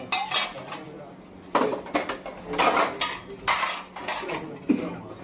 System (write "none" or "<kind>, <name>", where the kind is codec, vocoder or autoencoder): none